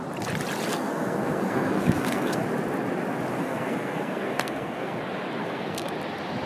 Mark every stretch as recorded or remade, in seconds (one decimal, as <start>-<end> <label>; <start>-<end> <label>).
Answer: 0.0-0.7 recorded; 0.7-2.4 remade; 2.4-3.4 recorded; 3.4-5.0 remade; 5.0-5.4 recorded; 5.4-5.9 remade; 5.9-6.5 recorded